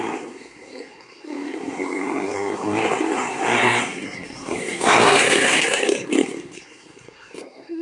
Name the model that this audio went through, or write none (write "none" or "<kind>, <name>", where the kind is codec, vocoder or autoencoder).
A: codec, SNAC